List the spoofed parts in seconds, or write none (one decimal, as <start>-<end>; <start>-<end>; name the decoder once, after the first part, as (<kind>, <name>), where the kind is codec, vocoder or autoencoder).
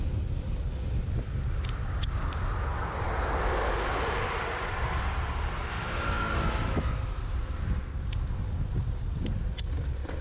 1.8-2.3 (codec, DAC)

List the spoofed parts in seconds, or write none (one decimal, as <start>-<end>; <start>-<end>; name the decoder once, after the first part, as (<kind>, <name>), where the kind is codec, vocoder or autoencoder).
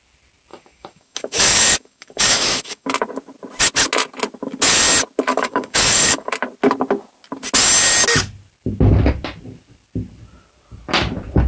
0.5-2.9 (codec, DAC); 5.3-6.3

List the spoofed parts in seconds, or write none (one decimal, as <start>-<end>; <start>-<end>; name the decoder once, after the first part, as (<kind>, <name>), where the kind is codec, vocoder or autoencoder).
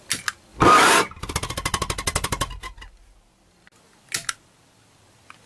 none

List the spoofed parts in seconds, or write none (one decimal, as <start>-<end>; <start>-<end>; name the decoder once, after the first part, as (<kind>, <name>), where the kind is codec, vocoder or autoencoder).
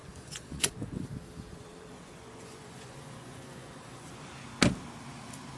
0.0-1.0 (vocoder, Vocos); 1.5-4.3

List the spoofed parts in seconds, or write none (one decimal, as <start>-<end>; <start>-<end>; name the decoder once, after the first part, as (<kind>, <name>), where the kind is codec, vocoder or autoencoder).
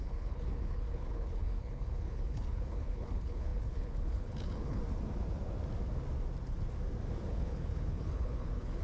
0.0-4.8 (codec, HILCodec); 7.3-8.8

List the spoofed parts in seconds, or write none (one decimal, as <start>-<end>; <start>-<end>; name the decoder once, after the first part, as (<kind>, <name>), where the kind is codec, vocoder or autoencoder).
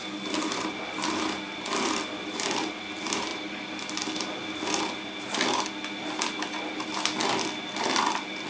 none